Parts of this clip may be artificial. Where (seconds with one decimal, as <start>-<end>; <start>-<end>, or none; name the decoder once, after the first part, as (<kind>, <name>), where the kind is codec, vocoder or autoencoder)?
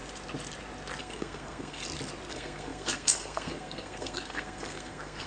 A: 1.0-1.8 (codec, SNAC); 2.3-5.3